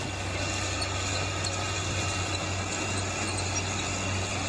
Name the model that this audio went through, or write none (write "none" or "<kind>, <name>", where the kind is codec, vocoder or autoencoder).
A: none